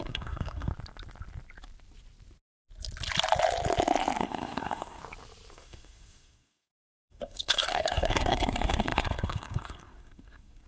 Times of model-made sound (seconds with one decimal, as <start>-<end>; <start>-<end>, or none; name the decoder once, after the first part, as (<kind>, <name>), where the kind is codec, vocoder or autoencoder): 0.0-0.7 (codec, SNAC); 4.2-5.0; 5.5-10.7